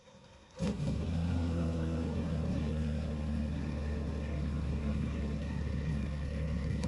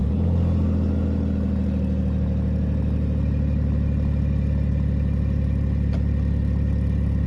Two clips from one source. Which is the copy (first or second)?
first